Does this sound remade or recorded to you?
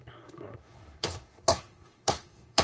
remade